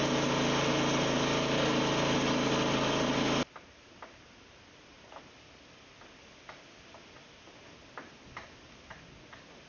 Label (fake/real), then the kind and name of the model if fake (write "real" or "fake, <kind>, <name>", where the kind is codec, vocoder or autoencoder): real